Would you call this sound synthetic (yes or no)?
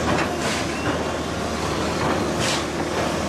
no